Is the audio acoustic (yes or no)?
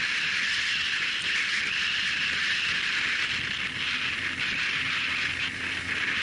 yes